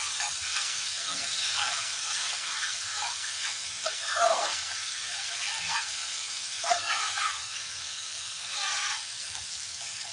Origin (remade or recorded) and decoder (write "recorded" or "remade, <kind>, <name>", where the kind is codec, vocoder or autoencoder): remade, codec, SNAC